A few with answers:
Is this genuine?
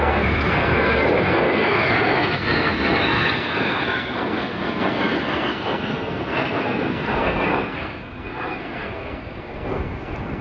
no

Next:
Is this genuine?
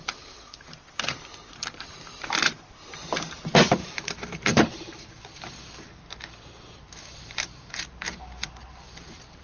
no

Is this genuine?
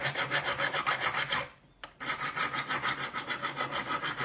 yes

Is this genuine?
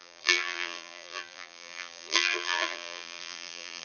no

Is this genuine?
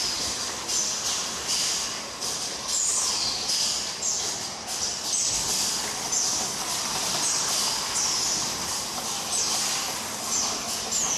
yes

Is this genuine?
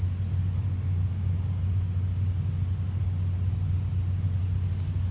yes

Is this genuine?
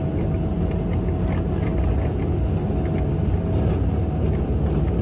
yes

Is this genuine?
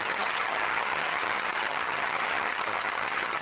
no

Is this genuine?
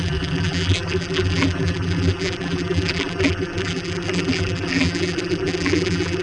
no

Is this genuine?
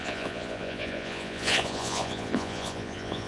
no